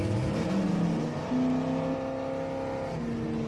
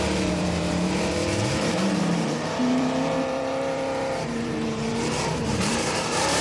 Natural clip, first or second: first